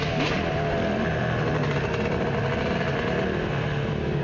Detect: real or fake real